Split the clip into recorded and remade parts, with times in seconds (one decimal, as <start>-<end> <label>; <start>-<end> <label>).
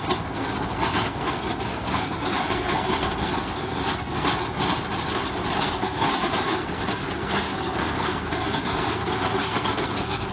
0.0-4.3 remade; 4.3-5.5 recorded; 5.5-10.3 remade